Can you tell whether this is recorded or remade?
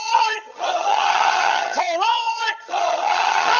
remade